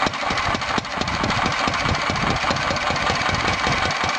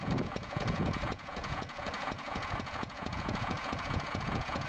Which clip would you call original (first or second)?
first